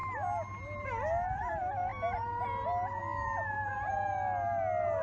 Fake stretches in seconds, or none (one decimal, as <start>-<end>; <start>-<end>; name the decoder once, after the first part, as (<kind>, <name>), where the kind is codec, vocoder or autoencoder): none